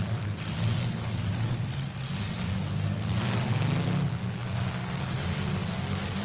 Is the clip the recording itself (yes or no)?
yes